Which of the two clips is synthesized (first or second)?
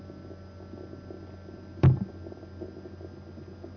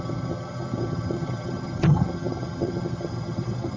second